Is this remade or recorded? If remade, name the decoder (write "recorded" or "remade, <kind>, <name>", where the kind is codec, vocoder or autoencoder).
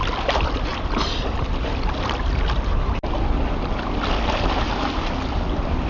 recorded